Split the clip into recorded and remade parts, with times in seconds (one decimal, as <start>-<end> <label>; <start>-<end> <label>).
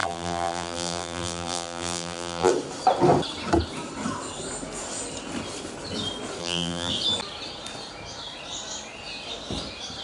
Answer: 0.0-2.5 remade; 2.5-6.4 recorded; 6.4-6.9 remade; 6.9-10.0 recorded